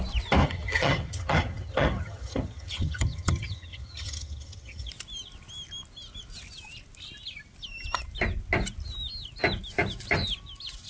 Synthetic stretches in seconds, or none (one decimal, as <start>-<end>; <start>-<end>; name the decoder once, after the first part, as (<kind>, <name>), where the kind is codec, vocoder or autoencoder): 0.4-4.9 (vocoder, HiFi-GAN)